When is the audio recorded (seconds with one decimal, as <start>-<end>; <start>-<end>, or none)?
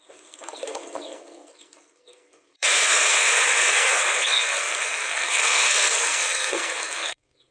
none